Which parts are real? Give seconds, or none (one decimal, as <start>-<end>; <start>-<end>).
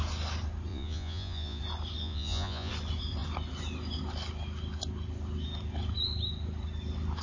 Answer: 0.0-0.7; 1.6-2.0; 2.7-7.2